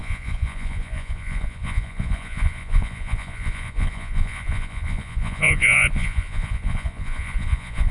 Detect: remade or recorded remade